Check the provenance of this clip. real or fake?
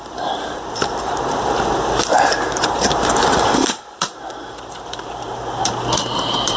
fake